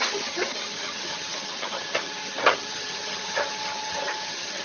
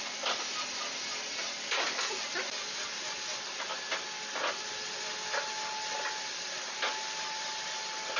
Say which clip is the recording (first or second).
second